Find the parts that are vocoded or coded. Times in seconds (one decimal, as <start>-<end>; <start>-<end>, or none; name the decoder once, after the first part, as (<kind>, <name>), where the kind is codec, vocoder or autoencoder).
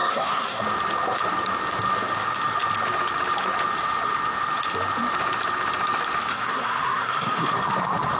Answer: 0.0-0.6 (codec, SNAC); 6.3-7.6